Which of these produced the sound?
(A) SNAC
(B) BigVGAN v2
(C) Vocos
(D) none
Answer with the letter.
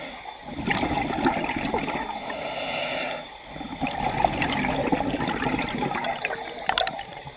D